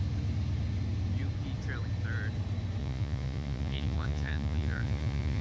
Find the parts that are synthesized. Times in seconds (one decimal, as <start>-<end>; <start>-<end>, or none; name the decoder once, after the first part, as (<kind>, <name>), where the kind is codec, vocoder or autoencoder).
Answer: 2.8-5.4 (vocoder, Vocos)